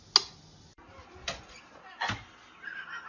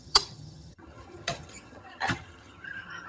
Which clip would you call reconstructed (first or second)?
second